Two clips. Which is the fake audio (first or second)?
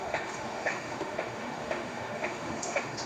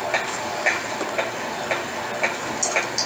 first